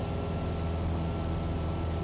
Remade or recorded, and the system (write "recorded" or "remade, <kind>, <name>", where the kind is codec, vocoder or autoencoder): recorded